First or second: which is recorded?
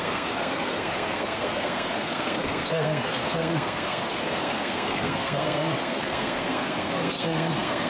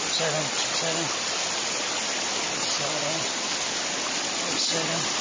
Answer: second